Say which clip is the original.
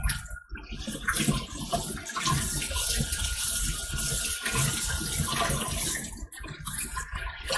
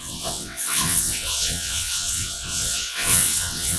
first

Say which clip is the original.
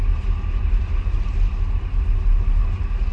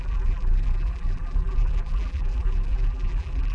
first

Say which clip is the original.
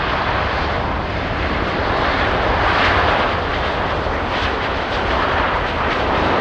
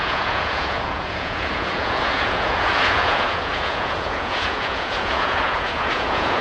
first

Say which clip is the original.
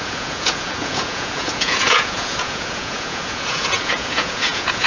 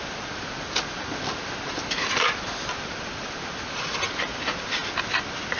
second